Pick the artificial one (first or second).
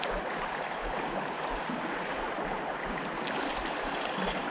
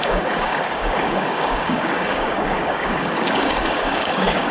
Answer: second